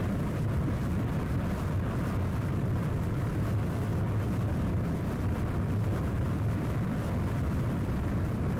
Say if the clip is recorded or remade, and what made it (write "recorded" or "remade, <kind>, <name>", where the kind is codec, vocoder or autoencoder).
recorded